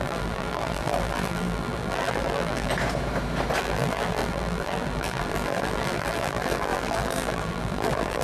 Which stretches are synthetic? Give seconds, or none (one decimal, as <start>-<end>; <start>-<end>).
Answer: 0.0-2.7; 3.6-8.2